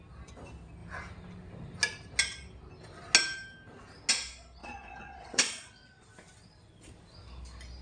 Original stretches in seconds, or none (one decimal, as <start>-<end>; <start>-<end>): 0.0-4.6; 6.1-7.8

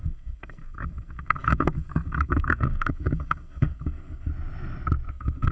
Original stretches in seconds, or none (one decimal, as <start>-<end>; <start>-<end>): 4.3-5.1

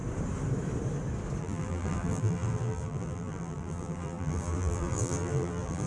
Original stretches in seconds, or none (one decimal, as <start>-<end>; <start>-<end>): 0.0-1.4

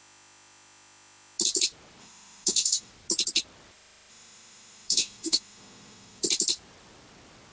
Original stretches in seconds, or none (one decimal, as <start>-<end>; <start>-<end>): 0.0-2.0; 2.9-4.1; 6.2-7.5

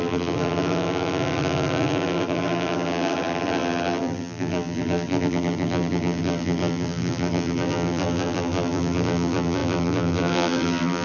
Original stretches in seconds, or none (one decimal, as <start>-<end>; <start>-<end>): none

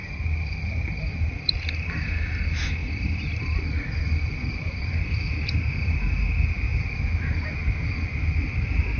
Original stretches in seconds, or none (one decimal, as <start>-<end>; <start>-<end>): 1.9-2.8; 5.0-9.0

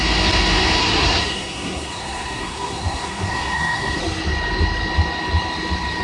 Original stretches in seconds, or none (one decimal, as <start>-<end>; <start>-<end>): 0.0-0.8; 4.0-6.0

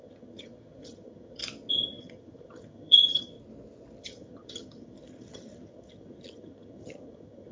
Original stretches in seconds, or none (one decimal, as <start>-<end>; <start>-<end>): 1.4-2.0; 3.3-4.0